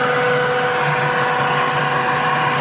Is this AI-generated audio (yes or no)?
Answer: no